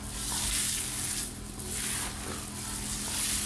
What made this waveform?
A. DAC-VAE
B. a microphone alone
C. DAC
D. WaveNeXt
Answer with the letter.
B